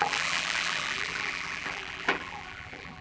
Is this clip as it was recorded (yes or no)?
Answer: no